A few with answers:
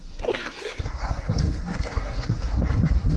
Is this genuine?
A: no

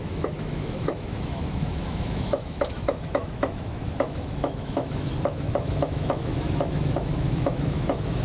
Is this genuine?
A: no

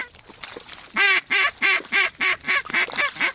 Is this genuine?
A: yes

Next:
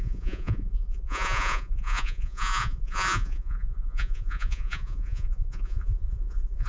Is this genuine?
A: no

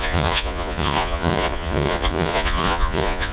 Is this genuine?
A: no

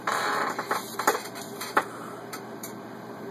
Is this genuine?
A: no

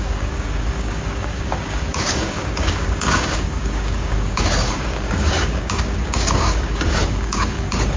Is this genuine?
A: no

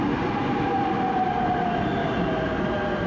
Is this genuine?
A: yes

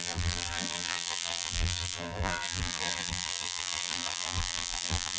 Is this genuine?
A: no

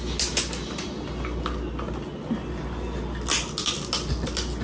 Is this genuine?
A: yes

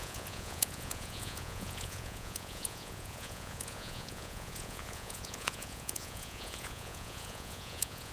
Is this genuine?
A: no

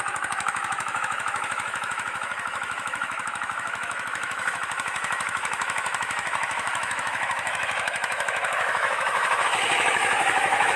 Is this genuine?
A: no